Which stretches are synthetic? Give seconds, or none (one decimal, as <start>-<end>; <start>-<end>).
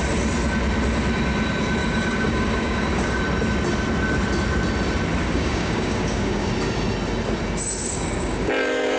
1.8-3.2; 5.2-6.5; 7.8-8.5